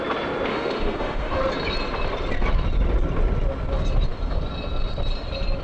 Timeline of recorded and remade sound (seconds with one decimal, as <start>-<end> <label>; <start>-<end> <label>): 0.0-0.5 recorded; 0.5-1.4 remade; 1.4-5.6 recorded